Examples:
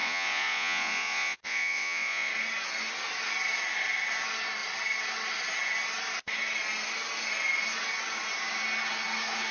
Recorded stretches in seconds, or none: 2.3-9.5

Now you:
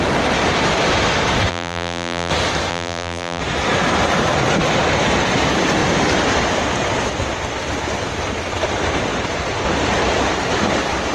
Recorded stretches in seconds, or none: 0.0-1.5; 2.3-2.7; 3.4-11.1

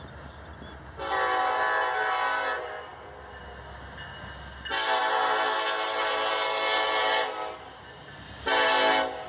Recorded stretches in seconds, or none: 0.0-9.3

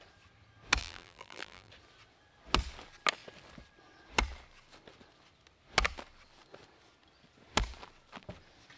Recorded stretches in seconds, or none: 0.0-0.8; 1.7-8.8

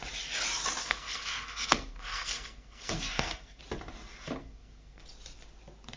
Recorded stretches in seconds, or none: 0.0-0.8; 3.6-4.4; 5.0-6.0

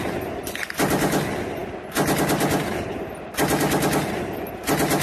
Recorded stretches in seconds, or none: 0.0-5.0

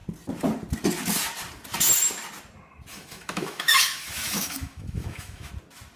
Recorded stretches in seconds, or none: 0.0-2.9; 5.5-6.0